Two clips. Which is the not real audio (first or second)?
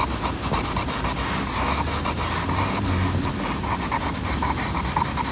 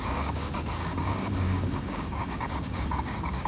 second